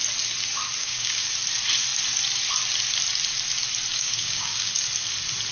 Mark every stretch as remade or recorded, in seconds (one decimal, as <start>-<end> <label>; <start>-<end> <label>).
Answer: 0.0-0.8 recorded; 0.8-1.3 remade; 1.3-3.9 recorded; 3.9-4.7 remade; 4.7-5.5 recorded